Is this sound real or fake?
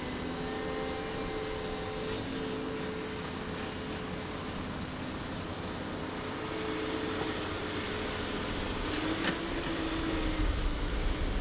real